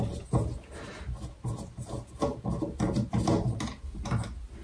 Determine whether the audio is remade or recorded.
recorded